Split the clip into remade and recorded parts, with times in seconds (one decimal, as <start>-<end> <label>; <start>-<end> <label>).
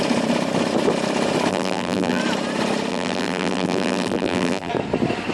0.0-1.5 recorded; 1.5-2.2 remade; 2.2-2.9 recorded; 2.9-4.7 remade; 4.7-5.3 recorded